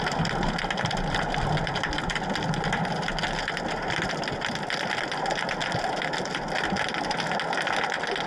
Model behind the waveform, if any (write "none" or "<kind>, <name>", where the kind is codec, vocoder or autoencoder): none